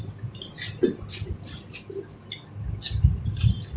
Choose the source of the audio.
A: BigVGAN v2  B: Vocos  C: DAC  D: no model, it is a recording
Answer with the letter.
D